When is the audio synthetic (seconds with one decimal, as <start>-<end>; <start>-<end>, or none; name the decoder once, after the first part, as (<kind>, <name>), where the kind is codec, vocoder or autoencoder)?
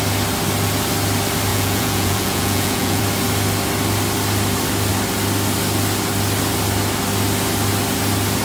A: 1.5-3.0 (vocoder, Vocos)